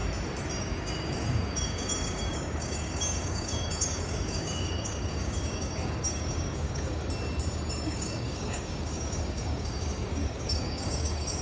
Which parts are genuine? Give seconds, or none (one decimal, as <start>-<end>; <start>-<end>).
0.0-0.6; 7.0-7.7